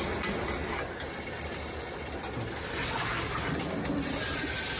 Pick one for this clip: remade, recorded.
recorded